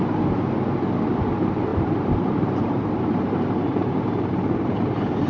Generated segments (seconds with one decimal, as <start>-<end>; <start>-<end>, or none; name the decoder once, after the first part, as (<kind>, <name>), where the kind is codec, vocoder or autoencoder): 1.7-5.3 (vocoder, BigVGAN v2)